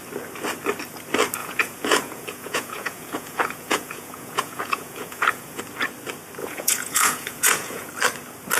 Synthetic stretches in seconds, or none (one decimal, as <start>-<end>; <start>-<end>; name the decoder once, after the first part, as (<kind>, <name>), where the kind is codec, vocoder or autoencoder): 1.4-5.6 (vocoder, Vocos); 6.4-7.9